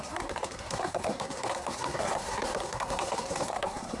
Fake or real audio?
fake